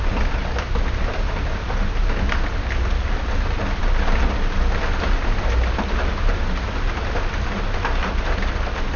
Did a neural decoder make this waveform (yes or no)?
no